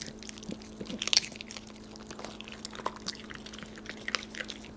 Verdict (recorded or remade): recorded